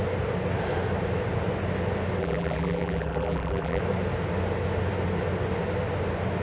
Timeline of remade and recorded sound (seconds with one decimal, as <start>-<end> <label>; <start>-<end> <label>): 0.0-2.2 recorded; 2.2-3.8 remade; 3.8-6.4 recorded